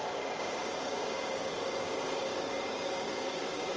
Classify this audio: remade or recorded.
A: remade